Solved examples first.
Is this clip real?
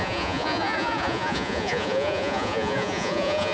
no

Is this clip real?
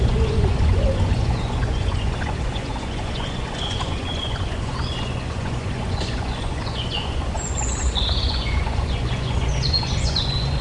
no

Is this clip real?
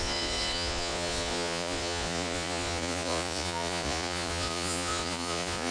no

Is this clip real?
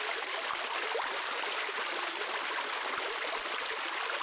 yes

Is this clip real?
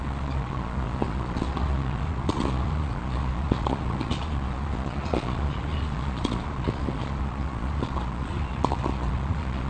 no